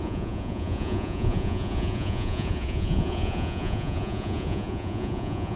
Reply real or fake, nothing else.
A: fake